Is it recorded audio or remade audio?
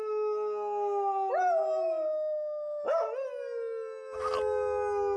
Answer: recorded